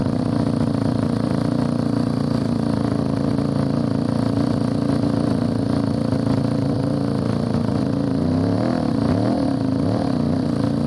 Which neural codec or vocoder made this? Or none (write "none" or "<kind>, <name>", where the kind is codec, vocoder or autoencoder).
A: none